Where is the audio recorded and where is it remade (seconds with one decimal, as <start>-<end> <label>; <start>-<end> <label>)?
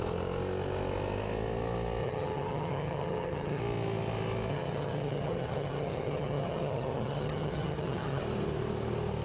0.0-2.0 recorded; 2.0-3.6 remade; 3.6-4.5 recorded; 4.5-8.2 remade; 8.2-9.2 recorded